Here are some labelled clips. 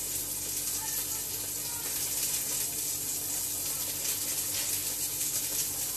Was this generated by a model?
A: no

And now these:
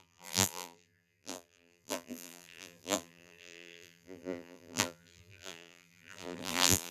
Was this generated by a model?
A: yes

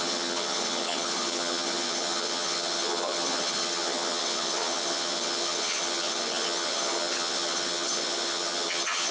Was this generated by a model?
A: yes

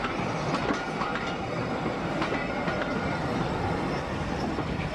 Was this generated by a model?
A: no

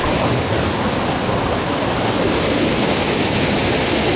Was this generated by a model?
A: no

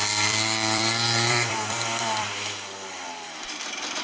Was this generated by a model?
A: yes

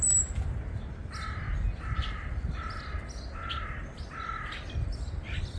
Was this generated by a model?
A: no